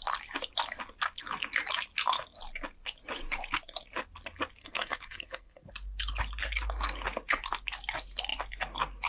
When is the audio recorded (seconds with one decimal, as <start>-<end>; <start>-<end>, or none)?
0.0-4.6; 5.7-9.1